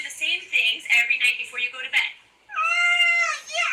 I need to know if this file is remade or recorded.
remade